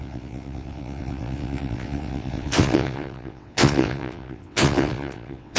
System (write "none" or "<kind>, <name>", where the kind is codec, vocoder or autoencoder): vocoder, WaveNeXt